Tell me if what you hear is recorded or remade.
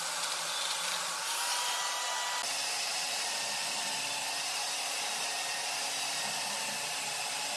recorded